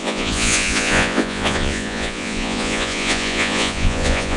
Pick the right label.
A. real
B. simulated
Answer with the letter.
B